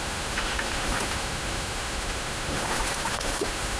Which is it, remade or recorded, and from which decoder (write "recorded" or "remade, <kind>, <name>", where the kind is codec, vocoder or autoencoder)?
remade, autoencoder, DAC-VAE